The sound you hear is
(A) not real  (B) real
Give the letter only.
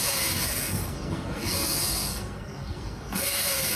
A